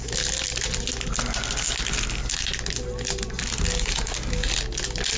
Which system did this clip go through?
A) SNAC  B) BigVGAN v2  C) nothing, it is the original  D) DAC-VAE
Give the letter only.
C